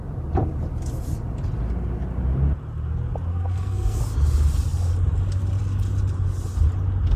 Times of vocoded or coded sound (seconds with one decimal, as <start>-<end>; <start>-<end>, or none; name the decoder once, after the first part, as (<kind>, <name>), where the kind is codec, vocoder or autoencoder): 3.3-4.0 (codec, SNAC)